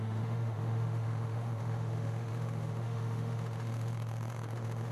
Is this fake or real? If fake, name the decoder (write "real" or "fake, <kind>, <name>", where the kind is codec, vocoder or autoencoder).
fake, autoencoder, DAC-VAE